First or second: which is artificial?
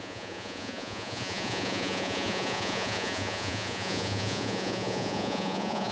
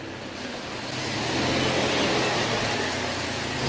first